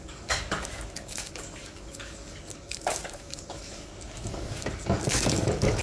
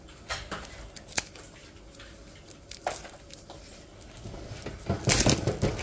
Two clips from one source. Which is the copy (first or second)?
first